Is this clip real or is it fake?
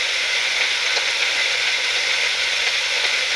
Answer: fake